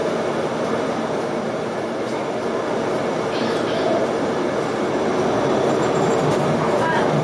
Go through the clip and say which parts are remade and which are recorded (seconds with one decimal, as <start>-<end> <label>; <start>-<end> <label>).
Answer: 0.0-7.2 recorded